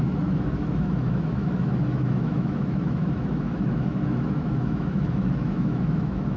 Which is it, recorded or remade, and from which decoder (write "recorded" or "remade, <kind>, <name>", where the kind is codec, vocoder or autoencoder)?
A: remade, autoencoder, DAC-VAE